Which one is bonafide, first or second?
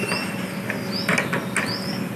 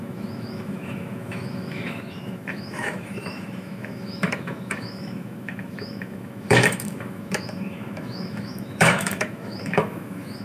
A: first